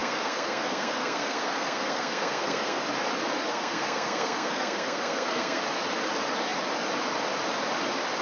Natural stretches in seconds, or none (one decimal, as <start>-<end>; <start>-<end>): 2.8-3.5; 5.6-8.2